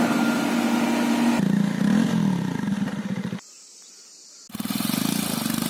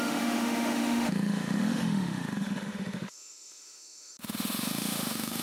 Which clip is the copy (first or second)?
second